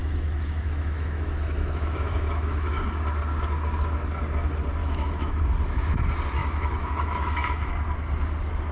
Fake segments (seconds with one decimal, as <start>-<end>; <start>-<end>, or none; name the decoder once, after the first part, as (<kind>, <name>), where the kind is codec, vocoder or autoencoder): 0.0-2.8 (autoencoder, DAC-VAE); 4.8-5.3; 6.4-7.7